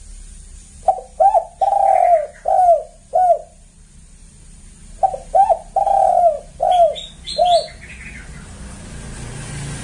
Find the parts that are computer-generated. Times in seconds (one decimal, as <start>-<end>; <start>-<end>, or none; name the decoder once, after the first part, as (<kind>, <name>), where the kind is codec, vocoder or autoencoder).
none